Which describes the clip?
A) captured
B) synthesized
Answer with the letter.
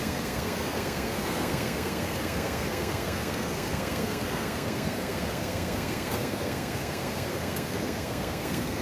B